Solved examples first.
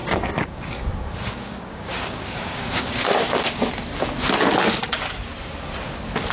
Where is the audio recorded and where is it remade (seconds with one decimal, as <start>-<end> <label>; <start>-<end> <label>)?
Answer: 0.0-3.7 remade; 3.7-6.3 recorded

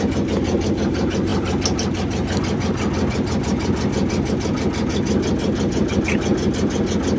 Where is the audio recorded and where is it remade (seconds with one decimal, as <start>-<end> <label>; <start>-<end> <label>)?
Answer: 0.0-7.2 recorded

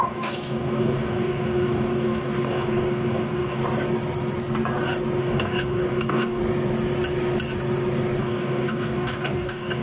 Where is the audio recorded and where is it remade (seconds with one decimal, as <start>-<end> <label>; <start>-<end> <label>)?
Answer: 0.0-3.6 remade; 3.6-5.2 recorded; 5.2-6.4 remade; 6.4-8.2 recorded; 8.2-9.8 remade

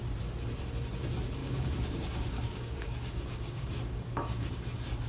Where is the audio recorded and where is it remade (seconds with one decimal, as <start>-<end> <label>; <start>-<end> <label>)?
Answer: 0.0-1.4 recorded; 1.4-4.5 remade; 4.5-5.1 recorded

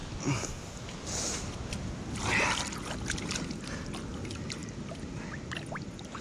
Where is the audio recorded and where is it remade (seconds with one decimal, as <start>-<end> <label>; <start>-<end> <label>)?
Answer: 0.0-6.2 recorded

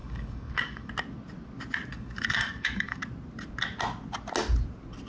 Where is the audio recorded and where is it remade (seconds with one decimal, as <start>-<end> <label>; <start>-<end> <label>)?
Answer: 0.0-0.9 remade; 0.9-1.9 recorded; 1.9-3.0 remade; 3.0-5.1 recorded